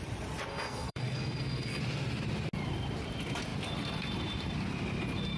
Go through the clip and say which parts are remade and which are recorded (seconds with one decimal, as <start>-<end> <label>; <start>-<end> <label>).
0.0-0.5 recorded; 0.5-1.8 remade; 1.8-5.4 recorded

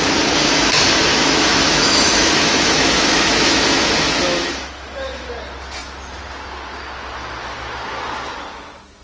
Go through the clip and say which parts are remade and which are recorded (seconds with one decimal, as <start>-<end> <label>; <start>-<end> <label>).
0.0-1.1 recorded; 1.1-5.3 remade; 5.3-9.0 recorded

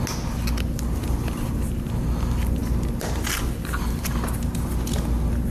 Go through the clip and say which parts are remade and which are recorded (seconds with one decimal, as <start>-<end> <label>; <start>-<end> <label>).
0.0-5.5 recorded

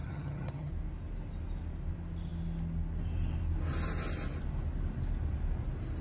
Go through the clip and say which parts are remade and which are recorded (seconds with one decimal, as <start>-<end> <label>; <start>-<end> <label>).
0.0-0.7 remade; 0.7-6.0 recorded

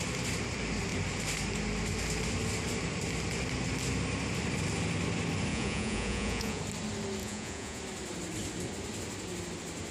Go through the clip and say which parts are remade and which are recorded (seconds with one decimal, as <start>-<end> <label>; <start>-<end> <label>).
0.0-5.5 recorded; 5.5-6.6 remade; 6.6-7.2 recorded; 7.2-7.8 remade; 7.8-9.9 recorded

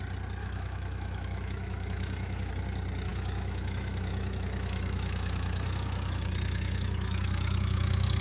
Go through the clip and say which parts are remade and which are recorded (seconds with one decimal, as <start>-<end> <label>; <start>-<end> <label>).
0.0-0.4 recorded; 0.4-2.5 remade; 2.5-3.1 recorded; 3.1-8.2 remade